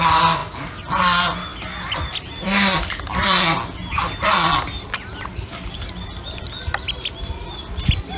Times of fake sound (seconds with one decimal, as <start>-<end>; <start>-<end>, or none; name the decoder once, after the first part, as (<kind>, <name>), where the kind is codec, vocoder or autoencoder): none